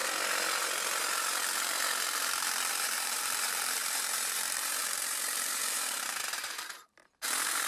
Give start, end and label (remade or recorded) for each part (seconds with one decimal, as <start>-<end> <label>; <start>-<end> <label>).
0.0-2.7 recorded; 2.7-7.7 remade